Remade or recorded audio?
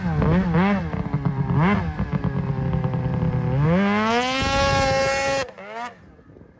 recorded